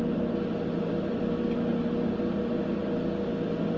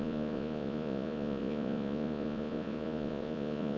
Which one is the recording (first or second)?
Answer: first